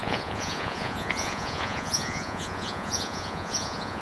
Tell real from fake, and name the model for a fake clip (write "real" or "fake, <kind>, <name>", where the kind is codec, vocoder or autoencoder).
fake, vocoder, Vocos